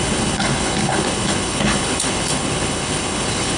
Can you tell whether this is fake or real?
fake